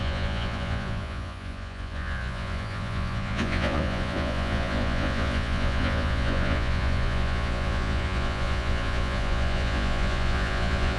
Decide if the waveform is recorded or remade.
remade